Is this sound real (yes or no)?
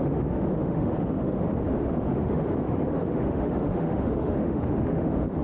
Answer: no